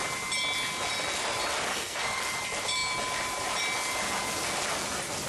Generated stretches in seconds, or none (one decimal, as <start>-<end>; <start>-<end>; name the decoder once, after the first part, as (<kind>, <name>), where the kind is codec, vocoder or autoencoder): 1.7-2.2 (codec, SNAC)